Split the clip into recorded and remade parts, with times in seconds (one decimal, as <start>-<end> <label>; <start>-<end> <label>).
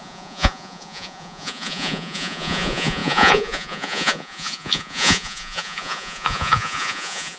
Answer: 0.0-7.4 remade